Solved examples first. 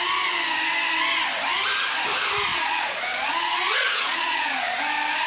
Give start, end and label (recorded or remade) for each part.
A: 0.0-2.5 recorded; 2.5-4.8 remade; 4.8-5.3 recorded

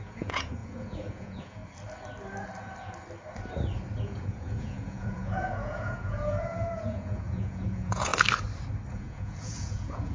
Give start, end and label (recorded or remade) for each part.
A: 0.0-1.6 remade; 1.6-4.0 recorded; 4.0-8.1 remade; 8.1-8.9 recorded; 8.9-10.1 remade

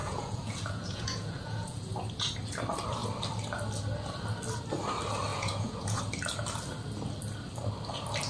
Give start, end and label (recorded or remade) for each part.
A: 0.0-1.9 remade; 1.9-5.3 recorded; 5.3-6.0 remade; 6.0-8.3 recorded